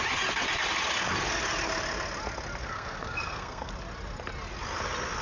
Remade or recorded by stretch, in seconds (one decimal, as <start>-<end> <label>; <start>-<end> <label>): 0.0-2.6 recorded; 2.6-3.7 remade; 3.7-5.2 recorded